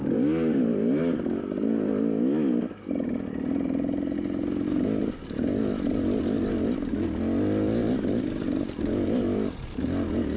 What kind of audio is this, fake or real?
real